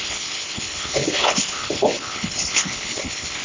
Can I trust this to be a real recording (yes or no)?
no